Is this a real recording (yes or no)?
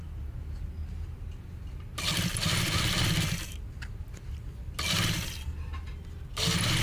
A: yes